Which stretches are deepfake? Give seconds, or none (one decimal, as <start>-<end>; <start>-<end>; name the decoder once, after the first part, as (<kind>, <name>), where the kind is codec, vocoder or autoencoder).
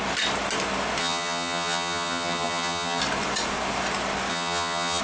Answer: 1.0-3.0 (vocoder, HiFi-GAN); 4.3-5.0